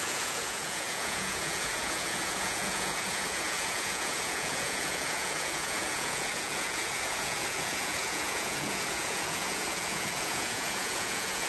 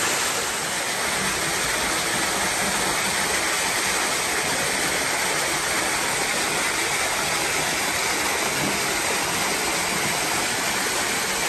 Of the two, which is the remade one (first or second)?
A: first